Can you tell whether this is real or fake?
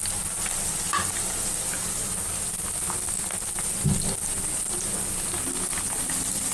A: real